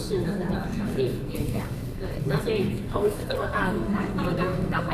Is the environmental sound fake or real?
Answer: fake